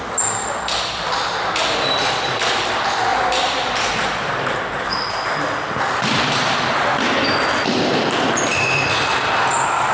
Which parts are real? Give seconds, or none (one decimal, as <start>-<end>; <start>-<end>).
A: 0.0-9.9